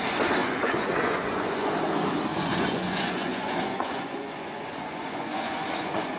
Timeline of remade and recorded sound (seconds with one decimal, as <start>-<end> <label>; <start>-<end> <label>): 0.0-0.4 recorded; 0.4-1.7 remade; 1.7-2.3 recorded; 2.3-6.2 remade